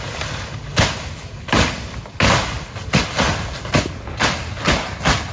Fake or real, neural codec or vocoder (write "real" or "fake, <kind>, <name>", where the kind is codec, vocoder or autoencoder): real